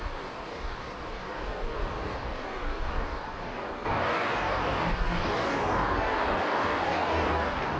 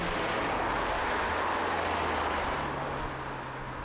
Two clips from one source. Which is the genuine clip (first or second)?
second